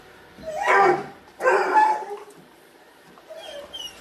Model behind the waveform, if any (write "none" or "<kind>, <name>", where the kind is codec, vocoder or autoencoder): vocoder, BigVGAN v2